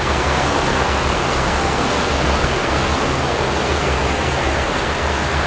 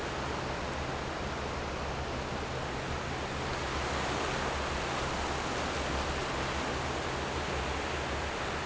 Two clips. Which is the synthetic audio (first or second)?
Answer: first